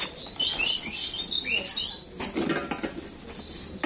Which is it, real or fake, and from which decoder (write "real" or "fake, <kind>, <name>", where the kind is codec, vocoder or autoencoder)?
real